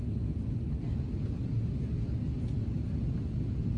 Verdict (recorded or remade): recorded